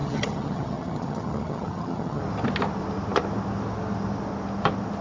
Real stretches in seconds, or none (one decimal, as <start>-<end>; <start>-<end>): 2.2-5.0